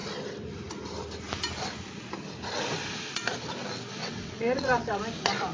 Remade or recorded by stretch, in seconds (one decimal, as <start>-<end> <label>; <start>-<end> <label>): 0.0-4.0 recorded; 4.0-5.0 remade; 5.0-5.5 recorded